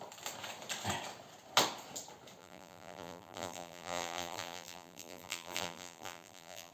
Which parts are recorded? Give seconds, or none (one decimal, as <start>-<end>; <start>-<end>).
0.0-2.4